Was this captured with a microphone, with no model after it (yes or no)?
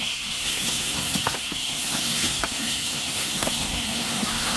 no